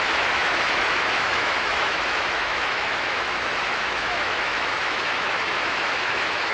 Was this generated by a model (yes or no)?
yes